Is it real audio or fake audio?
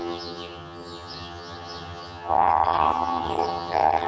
fake